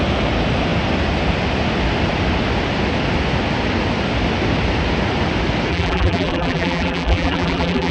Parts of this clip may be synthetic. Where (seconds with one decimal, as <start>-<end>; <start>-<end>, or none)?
5.7-7.9